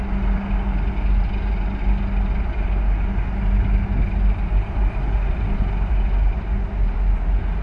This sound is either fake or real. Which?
real